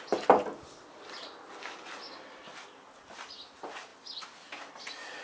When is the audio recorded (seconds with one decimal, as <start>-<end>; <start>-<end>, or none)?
0.0-5.2